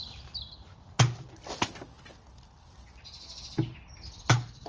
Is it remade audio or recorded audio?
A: recorded